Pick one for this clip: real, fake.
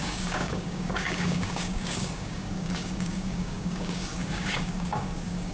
fake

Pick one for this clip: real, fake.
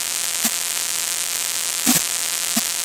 fake